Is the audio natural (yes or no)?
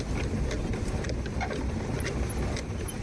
yes